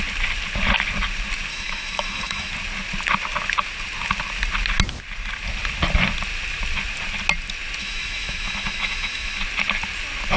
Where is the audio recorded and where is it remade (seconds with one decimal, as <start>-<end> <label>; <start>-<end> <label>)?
0.0-1.5 recorded; 1.5-2.5 remade; 2.5-7.8 recorded; 7.8-9.4 remade; 9.4-10.4 recorded